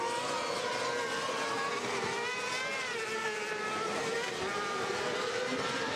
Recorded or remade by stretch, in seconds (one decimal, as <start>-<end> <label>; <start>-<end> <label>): 0.0-2.7 recorded; 2.7-5.2 remade; 5.2-6.0 recorded